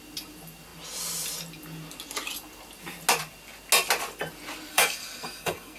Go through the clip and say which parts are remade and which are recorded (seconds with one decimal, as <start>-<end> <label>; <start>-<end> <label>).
0.0-4.7 recorded; 4.7-5.8 remade